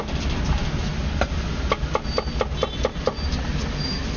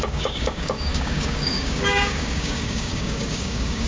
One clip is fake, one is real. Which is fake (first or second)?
second